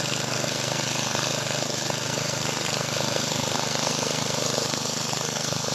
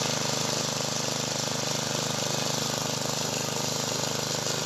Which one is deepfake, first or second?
first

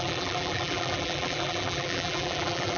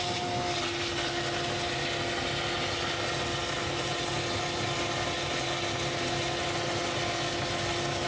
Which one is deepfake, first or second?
first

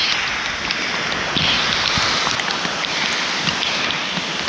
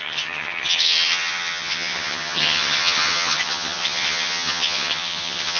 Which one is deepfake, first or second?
second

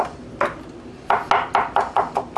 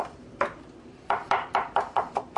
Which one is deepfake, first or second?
second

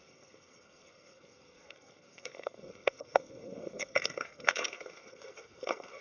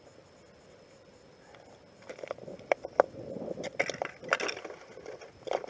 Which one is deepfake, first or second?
first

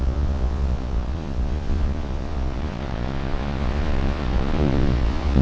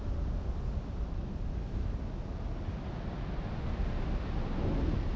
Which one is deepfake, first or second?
first